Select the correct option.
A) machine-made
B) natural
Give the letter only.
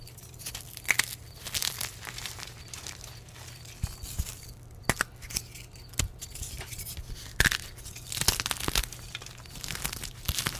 B